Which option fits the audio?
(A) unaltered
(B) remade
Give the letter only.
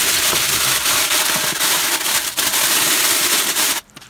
A